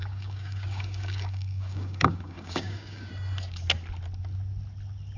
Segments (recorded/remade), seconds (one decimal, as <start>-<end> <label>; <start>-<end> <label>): 0.0-3.1 remade; 3.1-5.2 recorded